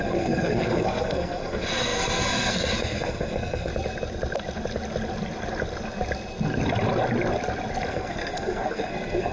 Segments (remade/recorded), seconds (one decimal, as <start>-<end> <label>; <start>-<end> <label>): 0.0-3.7 remade; 3.7-7.9 recorded; 7.9-9.3 remade